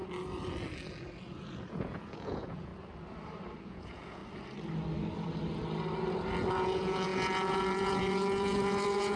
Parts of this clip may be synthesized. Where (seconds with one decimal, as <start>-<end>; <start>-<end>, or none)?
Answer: 1.7-2.7; 3.6-4.2; 6.5-9.2